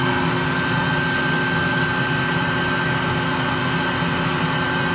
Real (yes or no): yes